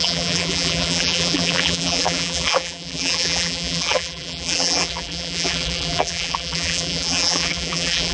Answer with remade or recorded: remade